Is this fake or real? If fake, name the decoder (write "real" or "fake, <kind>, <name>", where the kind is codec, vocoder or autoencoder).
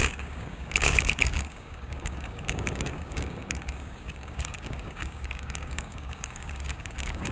fake, codec, DAC